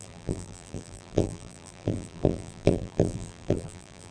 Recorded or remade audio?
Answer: remade